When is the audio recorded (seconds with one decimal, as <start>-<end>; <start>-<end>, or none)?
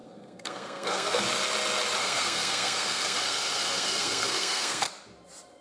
1.2-2.0; 4.9-5.6